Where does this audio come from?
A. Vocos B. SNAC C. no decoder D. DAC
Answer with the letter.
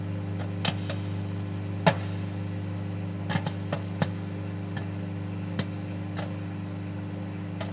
C